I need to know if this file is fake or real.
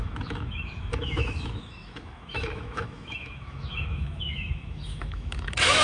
fake